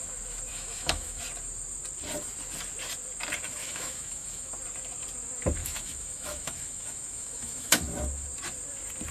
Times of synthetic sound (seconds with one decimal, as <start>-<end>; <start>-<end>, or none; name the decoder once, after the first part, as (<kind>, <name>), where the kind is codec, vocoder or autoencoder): 0.5-1.2 (autoencoder, DAC-VAE); 3.6-4.5; 5.6-7.8